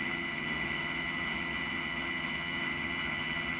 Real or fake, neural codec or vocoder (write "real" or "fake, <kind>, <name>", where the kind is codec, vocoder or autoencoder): fake, vocoder, HiFi-GAN